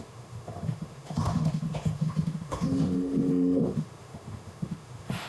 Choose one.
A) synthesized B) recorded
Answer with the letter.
A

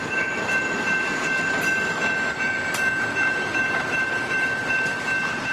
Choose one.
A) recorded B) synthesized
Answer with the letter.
A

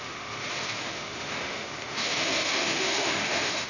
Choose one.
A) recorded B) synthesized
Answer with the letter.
B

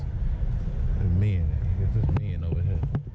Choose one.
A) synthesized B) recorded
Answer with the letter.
B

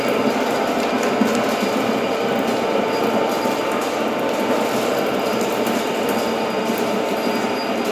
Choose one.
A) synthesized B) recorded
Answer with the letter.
B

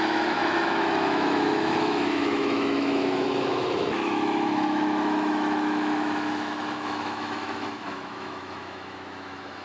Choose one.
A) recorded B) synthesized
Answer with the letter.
B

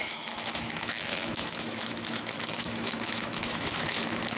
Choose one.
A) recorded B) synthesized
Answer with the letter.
B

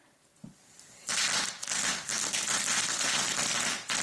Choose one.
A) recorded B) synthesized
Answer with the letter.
A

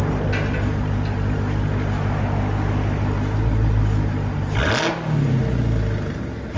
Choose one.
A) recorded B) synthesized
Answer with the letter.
A